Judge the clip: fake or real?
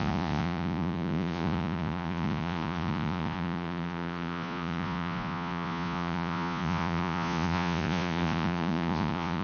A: fake